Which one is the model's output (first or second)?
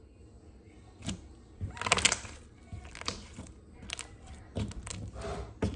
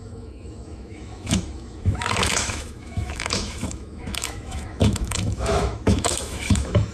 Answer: second